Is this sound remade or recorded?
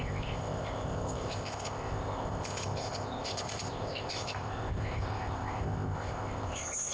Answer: remade